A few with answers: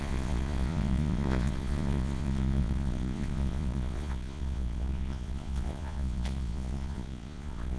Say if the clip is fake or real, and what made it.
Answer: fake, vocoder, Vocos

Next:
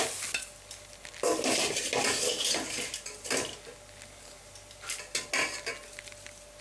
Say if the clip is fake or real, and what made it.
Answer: real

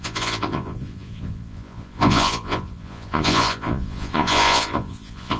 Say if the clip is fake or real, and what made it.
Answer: fake, vocoder, Vocos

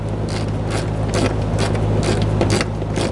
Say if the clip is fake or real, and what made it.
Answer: real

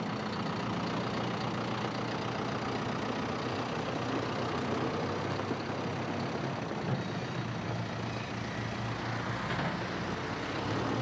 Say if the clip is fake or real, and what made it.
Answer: real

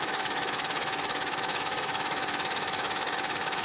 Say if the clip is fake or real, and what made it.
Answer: fake, autoencoder, DAC-VAE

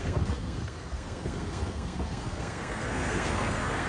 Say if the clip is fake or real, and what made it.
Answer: fake, codec, SNAC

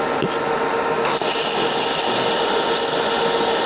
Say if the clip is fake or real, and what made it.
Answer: real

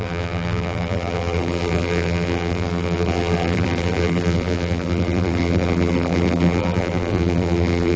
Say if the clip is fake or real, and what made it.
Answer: fake, vocoder, BigVGAN v2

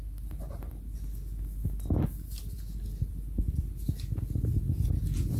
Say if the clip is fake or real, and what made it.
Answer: real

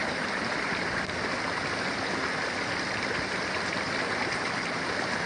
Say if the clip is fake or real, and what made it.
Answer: real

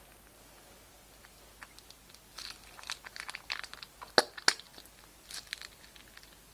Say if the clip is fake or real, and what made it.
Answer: real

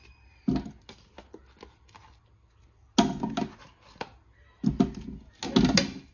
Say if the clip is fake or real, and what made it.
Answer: real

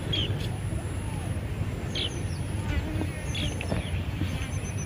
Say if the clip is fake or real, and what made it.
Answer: real